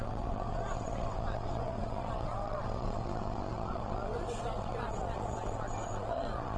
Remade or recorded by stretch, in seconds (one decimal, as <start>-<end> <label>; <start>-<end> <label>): 0.0-6.6 remade